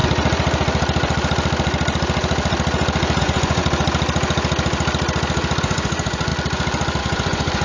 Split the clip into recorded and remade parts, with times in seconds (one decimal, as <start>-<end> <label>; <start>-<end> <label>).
0.0-3.2 recorded; 3.2-3.6 remade; 3.6-5.6 recorded; 5.6-6.3 remade; 6.3-7.0 recorded; 7.0-7.6 remade